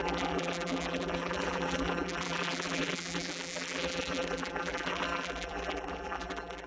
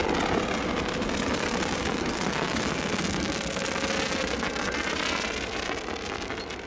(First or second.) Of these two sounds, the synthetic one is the first